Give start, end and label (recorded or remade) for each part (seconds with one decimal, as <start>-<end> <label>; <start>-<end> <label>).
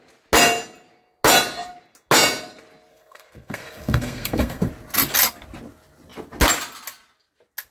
0.0-2.9 recorded; 2.9-4.7 remade; 4.7-7.7 recorded